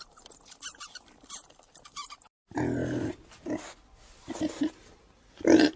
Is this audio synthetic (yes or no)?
no